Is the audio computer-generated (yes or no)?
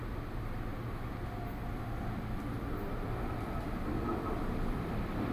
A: no